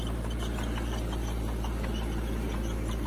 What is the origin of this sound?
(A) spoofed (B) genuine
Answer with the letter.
B